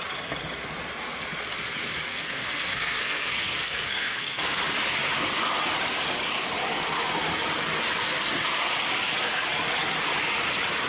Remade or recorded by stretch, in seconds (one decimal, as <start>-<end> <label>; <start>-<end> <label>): 0.0-2.1 recorded; 2.1-4.6 remade; 4.6-10.9 recorded